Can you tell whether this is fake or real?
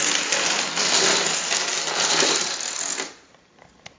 real